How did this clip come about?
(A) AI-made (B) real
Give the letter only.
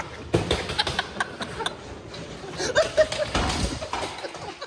B